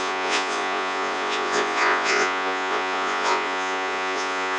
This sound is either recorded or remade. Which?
remade